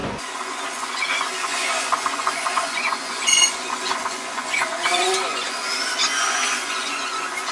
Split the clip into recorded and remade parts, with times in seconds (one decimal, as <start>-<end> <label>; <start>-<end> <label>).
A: 0.0-7.5 remade